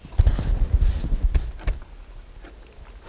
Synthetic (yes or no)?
no